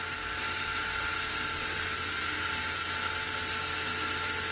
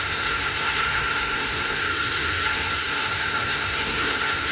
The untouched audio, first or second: first